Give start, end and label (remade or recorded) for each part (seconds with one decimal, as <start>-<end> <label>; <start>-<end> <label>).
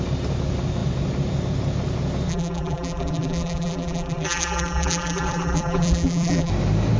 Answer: 0.0-2.3 recorded; 2.3-6.5 remade; 6.5-7.0 recorded